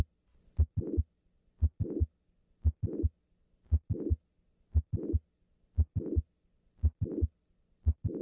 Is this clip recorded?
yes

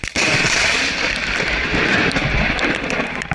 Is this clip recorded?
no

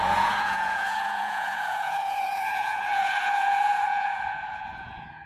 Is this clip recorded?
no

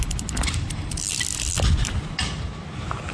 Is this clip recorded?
yes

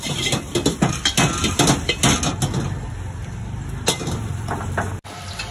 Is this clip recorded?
yes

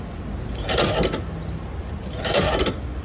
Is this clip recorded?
yes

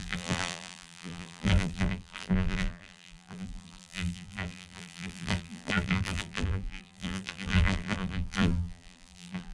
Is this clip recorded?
no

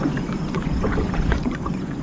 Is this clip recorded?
no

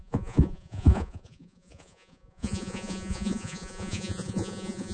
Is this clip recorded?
no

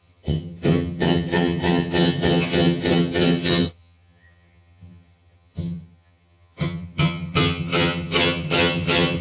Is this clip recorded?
no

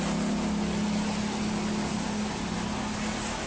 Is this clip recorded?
yes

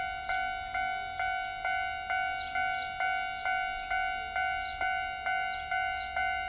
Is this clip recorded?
yes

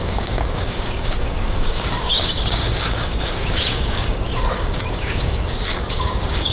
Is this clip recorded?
no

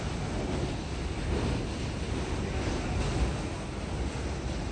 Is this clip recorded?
yes